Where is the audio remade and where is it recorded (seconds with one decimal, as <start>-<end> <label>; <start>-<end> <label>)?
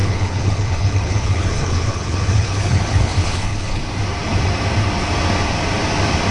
0.0-3.8 remade; 3.8-6.3 recorded